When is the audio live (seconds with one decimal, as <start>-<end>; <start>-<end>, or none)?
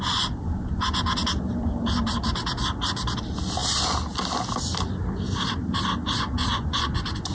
0.0-6.5